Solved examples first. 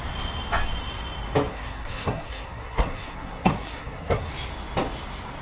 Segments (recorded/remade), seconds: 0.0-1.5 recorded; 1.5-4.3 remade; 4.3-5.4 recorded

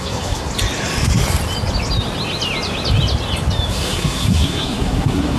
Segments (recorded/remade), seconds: 0.0-0.5 remade; 0.5-3.7 recorded; 3.7-5.4 remade

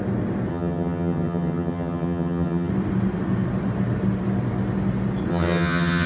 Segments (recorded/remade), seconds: 0.0-0.5 recorded; 0.5-2.7 remade; 2.7-5.3 recorded; 5.3-6.1 remade

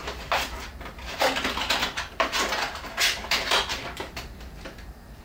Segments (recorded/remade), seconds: 0.0-1.8 recorded; 1.8-5.2 remade